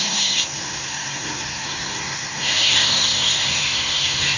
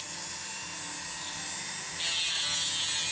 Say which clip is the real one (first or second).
second